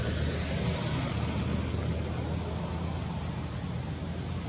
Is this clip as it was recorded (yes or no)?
yes